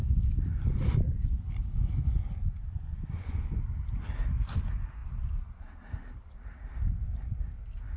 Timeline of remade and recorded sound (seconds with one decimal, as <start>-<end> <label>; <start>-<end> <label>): 0.0-2.4 recorded; 2.4-3.5 remade; 3.5-8.0 recorded